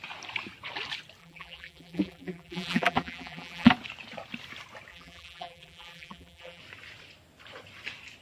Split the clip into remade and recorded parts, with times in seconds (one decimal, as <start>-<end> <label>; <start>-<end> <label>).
0.0-1.2 recorded; 1.2-3.7 remade; 3.7-4.9 recorded; 4.9-6.6 remade; 6.6-8.2 recorded